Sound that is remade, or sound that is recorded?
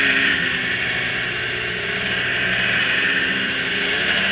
remade